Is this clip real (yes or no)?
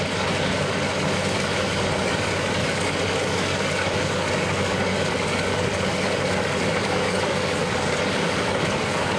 no